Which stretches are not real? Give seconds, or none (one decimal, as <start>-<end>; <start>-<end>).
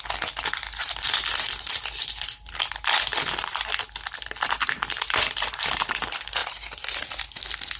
none